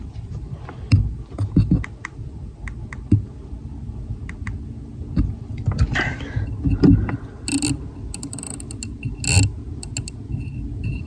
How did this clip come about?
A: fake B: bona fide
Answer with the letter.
B